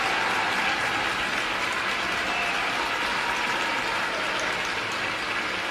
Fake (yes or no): no